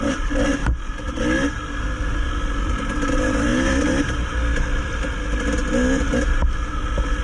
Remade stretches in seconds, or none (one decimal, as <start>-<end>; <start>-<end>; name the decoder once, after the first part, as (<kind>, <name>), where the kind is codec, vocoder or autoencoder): 0.6-1.2 (vocoder, BigVGAN v2)